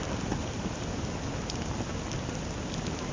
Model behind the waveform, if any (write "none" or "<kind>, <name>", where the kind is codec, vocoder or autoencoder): none